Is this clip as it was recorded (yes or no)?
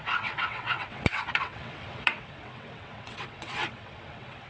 no